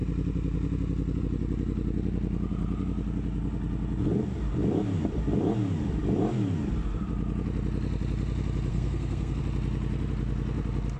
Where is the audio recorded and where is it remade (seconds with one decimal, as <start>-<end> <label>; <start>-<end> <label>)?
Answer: 0.0-8.7 recorded; 8.7-9.4 remade; 9.4-11.0 recorded